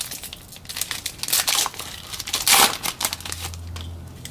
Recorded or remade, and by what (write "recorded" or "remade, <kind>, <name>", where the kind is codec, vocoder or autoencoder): recorded